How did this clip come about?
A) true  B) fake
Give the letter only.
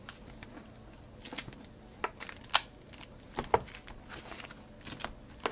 A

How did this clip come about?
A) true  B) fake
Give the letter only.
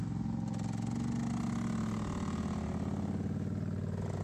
A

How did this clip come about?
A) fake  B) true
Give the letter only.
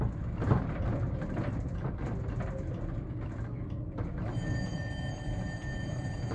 B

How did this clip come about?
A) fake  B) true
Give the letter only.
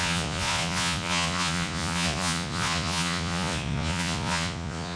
A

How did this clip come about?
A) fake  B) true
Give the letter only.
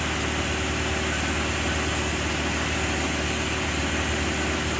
B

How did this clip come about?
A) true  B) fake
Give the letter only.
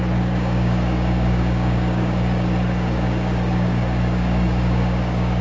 B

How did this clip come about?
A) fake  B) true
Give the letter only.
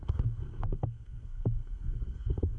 A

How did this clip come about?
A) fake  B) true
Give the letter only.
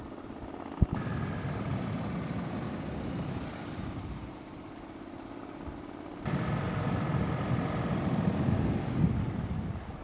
B